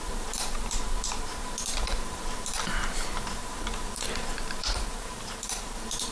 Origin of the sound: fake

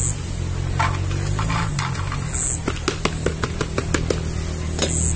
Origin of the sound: real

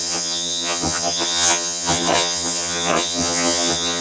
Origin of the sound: fake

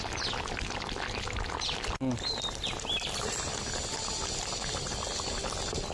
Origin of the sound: real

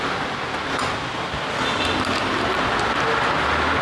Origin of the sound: real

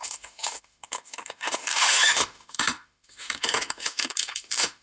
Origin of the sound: fake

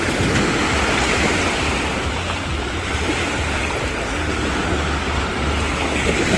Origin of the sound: real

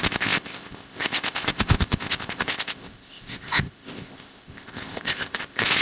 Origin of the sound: fake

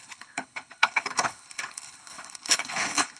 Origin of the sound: fake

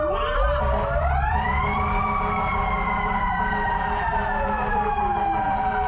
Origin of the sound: fake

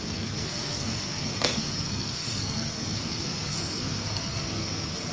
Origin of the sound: fake